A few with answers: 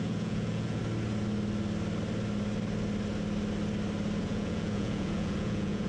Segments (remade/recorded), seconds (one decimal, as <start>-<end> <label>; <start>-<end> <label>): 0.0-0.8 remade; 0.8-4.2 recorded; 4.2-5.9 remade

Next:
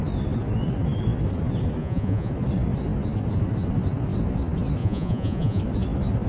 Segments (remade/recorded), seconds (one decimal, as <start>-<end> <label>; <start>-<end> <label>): 0.0-1.8 recorded; 1.8-2.3 remade; 2.3-4.8 recorded; 4.8-5.6 remade; 5.6-6.3 recorded

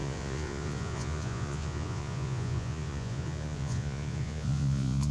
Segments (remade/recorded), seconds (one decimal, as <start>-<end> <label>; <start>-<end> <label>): 0.0-5.1 remade